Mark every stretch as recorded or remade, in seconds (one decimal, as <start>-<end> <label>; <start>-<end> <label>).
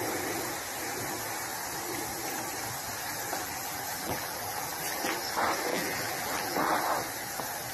0.0-3.3 recorded; 3.3-5.1 remade; 5.1-5.7 recorded; 5.7-6.8 remade; 6.8-7.7 recorded